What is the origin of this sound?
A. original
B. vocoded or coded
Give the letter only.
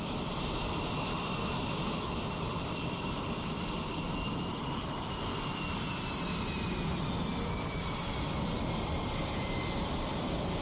B